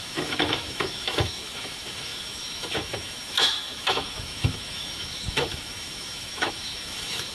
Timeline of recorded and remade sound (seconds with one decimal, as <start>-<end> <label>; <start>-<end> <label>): 0.0-7.3 remade